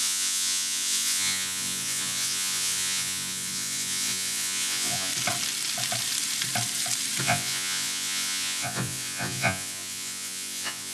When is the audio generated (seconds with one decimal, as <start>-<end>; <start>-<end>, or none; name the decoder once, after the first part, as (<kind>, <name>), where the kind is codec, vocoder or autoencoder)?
0.0-5.1 (vocoder, Vocos); 7.2-10.9